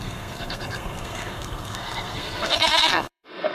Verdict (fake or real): fake